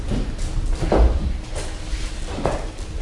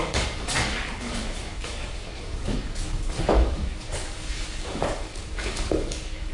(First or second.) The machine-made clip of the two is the second